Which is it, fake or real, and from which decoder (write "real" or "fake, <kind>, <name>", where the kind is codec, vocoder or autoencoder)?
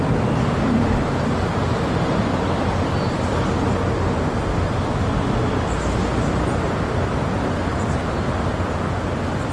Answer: real